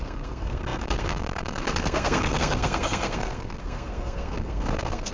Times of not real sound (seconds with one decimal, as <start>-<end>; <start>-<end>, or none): 0.0-5.1